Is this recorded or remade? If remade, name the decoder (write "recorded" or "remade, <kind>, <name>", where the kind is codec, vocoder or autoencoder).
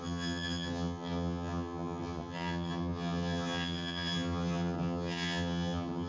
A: remade, vocoder, HiFi-GAN